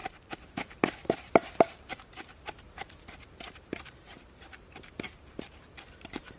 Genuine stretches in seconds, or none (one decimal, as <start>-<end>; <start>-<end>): none